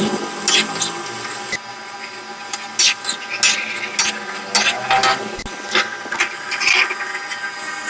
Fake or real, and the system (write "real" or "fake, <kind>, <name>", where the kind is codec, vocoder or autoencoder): real